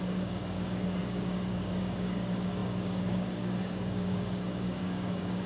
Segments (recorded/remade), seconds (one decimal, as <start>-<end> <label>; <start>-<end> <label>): 0.0-5.5 remade